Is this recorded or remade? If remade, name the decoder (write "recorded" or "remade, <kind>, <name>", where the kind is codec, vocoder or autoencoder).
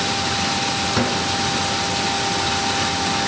recorded